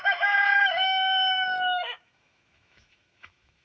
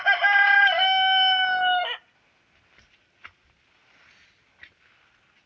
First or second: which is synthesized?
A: first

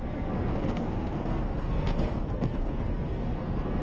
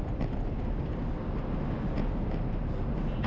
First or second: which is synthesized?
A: first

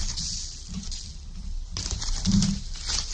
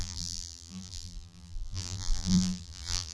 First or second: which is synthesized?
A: second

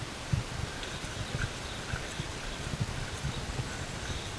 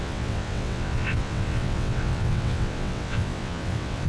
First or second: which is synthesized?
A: second